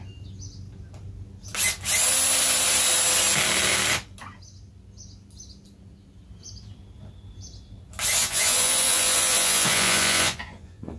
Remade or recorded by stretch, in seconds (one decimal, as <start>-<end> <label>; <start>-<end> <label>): 0.0-8.2 recorded; 8.2-11.0 remade